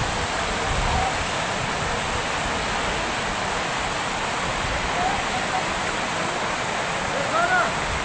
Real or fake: real